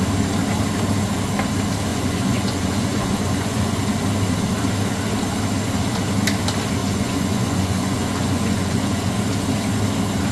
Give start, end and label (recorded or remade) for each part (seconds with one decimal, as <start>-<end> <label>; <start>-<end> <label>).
0.0-1.9 recorded; 1.9-3.8 remade; 3.8-6.8 recorded; 6.8-9.1 remade; 9.1-10.3 recorded